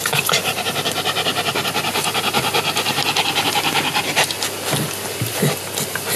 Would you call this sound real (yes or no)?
yes